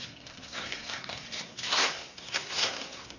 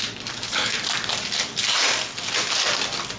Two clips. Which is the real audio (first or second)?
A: second